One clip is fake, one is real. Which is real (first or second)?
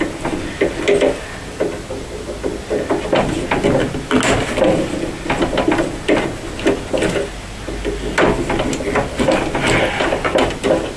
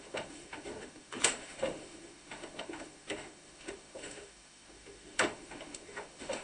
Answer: first